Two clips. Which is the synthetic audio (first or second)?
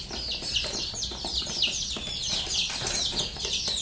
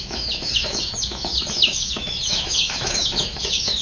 second